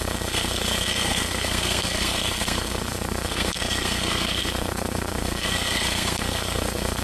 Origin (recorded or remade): remade